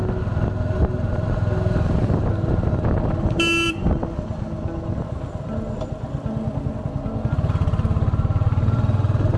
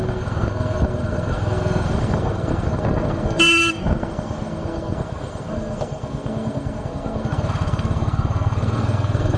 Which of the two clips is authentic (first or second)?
first